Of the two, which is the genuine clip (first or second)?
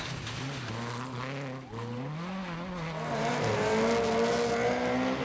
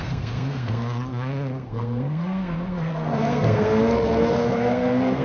first